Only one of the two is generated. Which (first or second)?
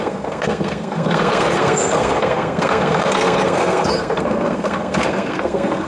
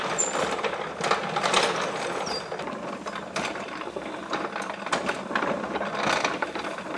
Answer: first